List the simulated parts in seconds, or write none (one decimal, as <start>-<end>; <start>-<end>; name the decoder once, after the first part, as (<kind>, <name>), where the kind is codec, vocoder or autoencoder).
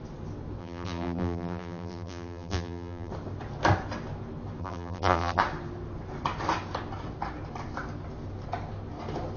0.6-3.1 (vocoder, BigVGAN v2); 4.6-5.4